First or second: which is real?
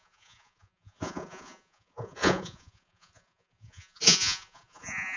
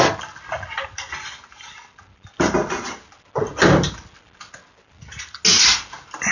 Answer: second